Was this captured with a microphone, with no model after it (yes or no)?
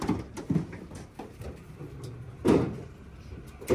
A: yes